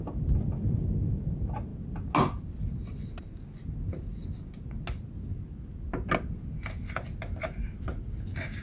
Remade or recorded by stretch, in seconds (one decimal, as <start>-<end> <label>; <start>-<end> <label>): 0.0-8.6 recorded